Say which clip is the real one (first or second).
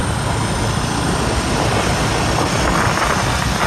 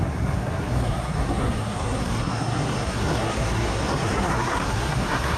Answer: first